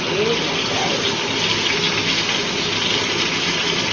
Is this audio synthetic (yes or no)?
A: no